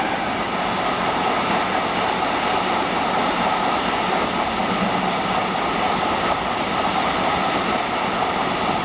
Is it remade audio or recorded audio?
recorded